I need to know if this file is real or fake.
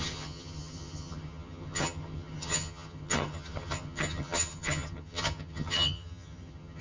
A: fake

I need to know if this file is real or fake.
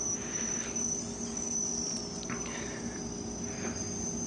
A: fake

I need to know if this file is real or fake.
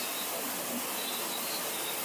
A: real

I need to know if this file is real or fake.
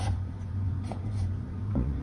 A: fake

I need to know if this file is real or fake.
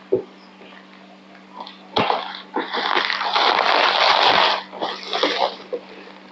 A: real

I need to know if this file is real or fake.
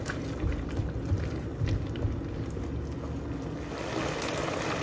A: real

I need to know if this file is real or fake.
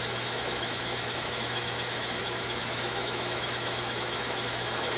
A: fake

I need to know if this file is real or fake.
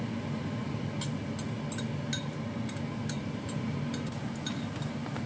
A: real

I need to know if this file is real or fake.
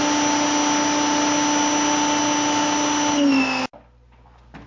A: real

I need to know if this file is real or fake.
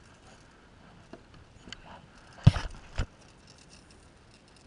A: real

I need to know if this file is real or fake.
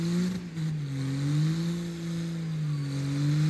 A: real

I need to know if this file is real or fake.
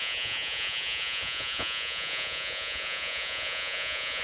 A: fake